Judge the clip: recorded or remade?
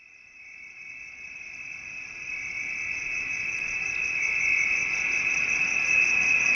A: recorded